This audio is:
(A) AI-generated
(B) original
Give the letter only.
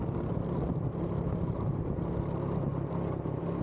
B